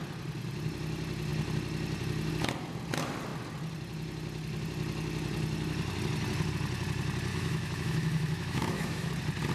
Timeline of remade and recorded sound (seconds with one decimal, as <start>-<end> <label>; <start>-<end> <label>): 0.0-7.3 recorded; 7.3-9.1 remade; 9.1-9.5 recorded